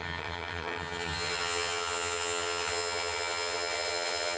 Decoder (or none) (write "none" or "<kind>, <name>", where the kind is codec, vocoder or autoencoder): vocoder, HiFi-GAN